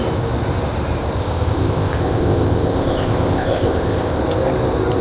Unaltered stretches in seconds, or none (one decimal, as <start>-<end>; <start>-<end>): 0.0-1.2; 4.2-5.0